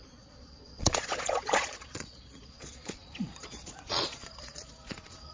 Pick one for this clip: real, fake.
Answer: fake